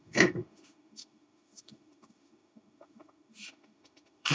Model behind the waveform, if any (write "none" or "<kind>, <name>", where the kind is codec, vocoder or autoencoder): autoencoder, DAC-VAE